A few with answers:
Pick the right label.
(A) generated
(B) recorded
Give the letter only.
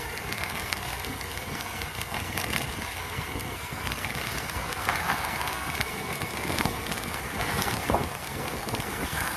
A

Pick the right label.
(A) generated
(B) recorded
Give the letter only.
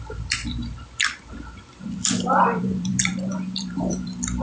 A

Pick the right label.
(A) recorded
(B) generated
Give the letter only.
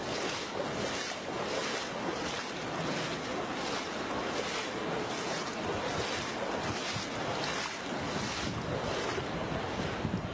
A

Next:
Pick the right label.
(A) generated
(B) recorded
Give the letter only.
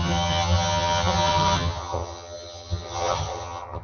A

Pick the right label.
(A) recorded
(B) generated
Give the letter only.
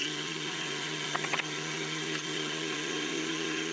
B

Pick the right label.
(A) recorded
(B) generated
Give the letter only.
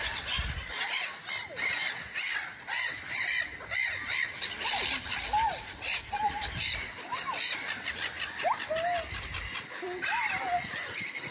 A